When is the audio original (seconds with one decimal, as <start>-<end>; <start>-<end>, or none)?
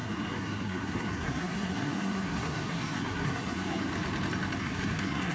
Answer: 3.9-4.6